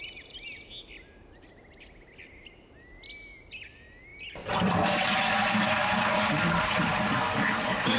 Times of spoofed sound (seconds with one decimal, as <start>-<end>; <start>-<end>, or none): 5.8-6.3

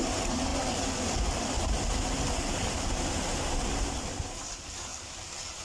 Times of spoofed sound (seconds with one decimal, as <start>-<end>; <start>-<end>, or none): none

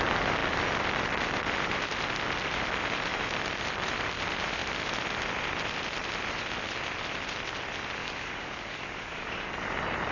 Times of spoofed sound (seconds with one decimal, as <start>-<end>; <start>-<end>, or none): 8.0-9.5

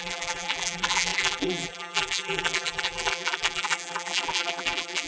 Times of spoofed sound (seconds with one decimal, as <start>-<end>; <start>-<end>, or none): 0.0-5.1

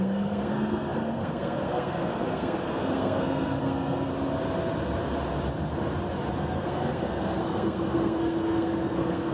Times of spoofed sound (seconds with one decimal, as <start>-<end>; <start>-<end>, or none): 0.0-4.1; 6.4-9.3

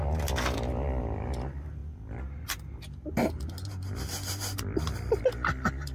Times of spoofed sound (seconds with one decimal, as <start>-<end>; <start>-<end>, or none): none